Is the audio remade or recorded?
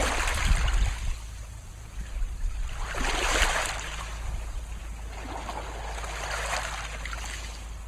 recorded